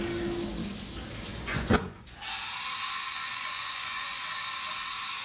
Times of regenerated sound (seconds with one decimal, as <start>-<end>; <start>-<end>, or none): 1.3-2.2; 3.1-4.2